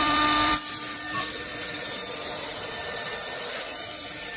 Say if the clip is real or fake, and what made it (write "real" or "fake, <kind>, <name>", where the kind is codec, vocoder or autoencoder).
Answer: fake, vocoder, BigVGAN v2